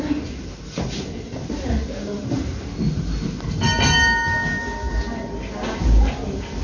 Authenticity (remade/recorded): recorded